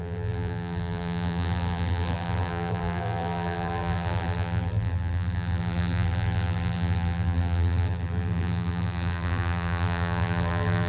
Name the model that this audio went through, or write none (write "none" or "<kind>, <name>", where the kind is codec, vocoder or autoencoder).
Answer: vocoder, BigVGAN v2